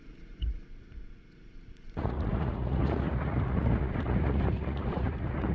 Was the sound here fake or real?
fake